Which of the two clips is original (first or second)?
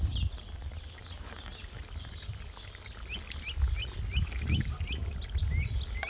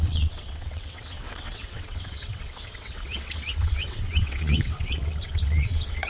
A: first